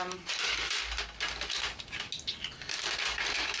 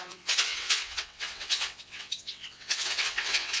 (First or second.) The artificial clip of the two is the second